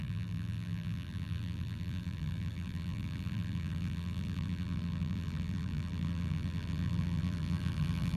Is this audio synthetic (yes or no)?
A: yes